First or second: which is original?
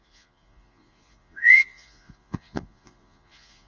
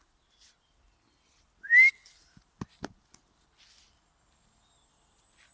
second